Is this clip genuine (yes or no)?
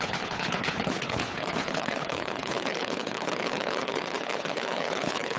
no